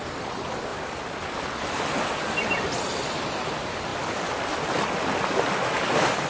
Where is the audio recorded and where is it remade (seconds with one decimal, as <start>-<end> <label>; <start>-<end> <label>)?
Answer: 0.0-6.3 recorded